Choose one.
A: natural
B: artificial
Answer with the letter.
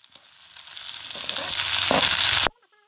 A